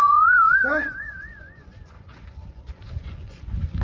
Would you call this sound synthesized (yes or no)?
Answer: yes